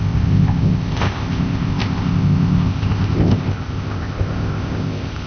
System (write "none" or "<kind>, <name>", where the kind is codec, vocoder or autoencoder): codec, ZipCodec